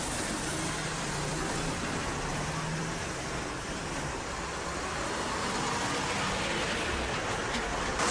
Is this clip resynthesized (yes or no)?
no